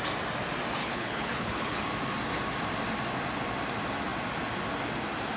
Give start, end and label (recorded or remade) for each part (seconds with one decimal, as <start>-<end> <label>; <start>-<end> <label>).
0.0-0.8 recorded; 0.8-1.8 remade; 1.8-5.4 recorded